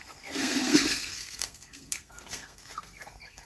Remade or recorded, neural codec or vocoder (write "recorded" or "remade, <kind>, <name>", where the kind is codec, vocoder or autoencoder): remade, codec, SNAC